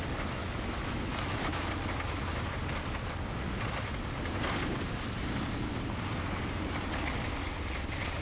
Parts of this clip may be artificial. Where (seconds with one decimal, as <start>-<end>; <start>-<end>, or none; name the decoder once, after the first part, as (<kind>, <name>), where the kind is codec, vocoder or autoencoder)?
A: 0.4-1.7 (autoencoder, DAC-VAE)